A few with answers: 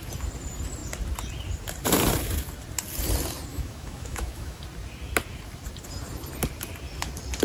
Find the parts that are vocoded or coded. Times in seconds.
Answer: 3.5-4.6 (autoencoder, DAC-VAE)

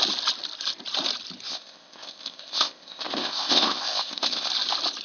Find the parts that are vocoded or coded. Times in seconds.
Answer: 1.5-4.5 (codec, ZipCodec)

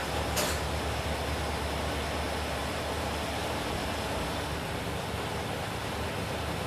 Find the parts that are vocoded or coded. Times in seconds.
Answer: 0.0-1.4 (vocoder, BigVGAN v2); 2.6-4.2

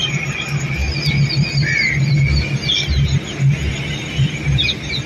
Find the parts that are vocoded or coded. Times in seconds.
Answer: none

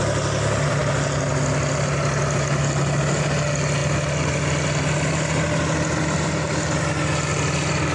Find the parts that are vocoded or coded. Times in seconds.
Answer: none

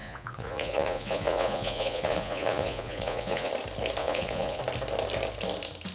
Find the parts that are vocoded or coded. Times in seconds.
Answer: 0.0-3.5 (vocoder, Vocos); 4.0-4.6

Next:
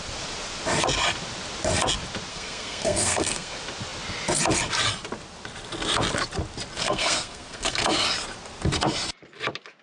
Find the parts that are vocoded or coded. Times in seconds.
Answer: 2.3-3.5 (codec, SNAC); 6.8-7.8

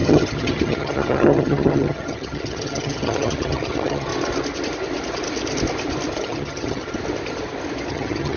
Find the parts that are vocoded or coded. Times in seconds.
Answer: 0.0-4.1 (vocoder, HiFi-GAN); 6.2-6.8; 7.9-8.4